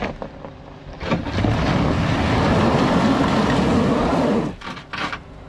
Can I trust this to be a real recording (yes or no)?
no